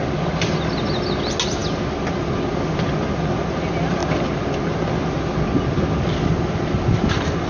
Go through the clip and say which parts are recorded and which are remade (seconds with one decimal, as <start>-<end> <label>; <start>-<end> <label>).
0.0-7.5 recorded